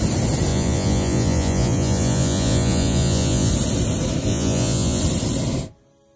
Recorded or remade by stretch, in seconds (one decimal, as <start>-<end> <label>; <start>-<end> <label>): 0.0-0.5 recorded; 0.5-3.5 remade; 3.5-4.3 recorded; 4.3-5.0 remade; 5.0-6.2 recorded